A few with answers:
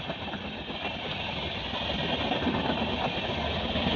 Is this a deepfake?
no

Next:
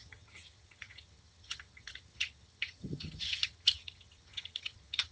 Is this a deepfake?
yes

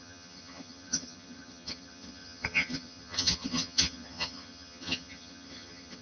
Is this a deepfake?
yes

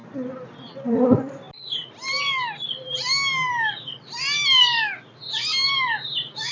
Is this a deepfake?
no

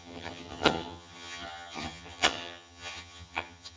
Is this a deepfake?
yes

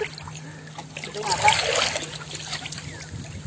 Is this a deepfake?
no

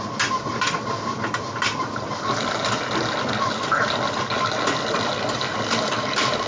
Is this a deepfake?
no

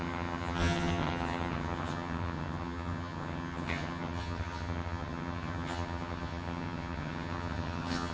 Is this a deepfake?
yes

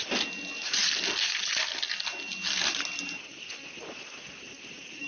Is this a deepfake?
no